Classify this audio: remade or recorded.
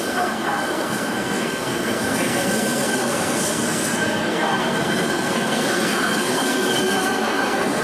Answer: remade